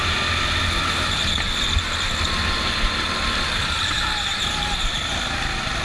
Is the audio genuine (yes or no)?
yes